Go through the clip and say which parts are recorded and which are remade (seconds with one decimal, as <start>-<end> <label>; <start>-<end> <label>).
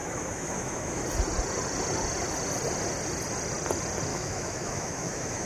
0.0-1.0 remade; 1.0-4.1 recorded; 4.1-5.5 remade